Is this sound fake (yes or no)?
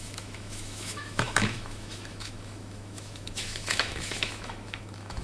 yes